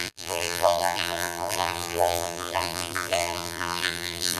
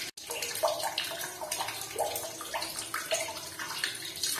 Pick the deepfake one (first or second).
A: first